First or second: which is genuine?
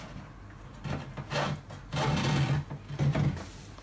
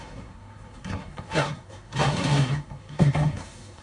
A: first